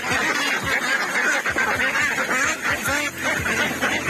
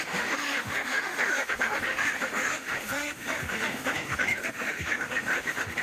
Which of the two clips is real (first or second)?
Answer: first